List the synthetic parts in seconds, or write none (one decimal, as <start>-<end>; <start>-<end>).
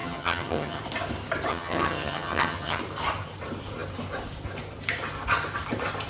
0.0-0.8; 1.5-2.8